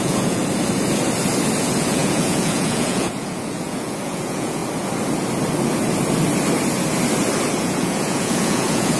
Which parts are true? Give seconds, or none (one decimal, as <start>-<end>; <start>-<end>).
0.4-1.6; 4.6-7.6